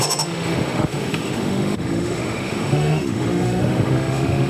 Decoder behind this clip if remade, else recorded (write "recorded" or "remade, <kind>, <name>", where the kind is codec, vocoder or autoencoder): remade, autoencoder, DAC-VAE